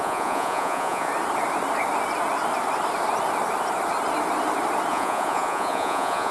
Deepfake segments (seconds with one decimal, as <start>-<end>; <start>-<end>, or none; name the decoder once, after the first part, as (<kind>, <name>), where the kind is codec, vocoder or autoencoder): 0.0-1.1 (vocoder, Vocos); 4.9-6.3